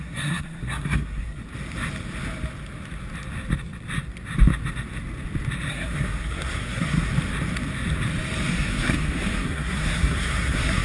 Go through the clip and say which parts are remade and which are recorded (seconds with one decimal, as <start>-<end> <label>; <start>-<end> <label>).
0.0-1.4 remade; 1.4-5.7 recorded; 5.7-7.1 remade; 7.1-8.5 recorded; 8.5-10.8 remade